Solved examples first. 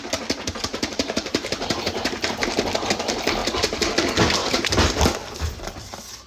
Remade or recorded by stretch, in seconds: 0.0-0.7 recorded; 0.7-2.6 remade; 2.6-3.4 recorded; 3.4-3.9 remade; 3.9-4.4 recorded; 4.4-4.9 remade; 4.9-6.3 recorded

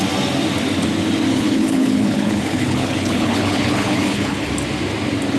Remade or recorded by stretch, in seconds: 0.0-1.3 recorded; 1.3-4.5 remade; 4.5-5.4 recorded

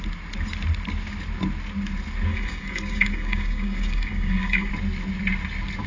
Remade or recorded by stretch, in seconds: 0.0-2.3 recorded; 2.3-4.7 remade; 4.7-5.9 recorded

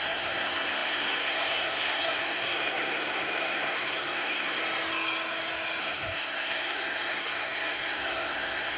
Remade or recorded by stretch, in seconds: 0.0-4.6 remade; 4.6-5.8 recorded; 5.8-8.8 remade